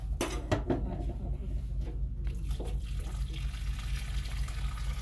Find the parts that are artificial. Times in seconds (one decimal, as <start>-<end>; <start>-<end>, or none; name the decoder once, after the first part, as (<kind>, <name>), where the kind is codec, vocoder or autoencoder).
none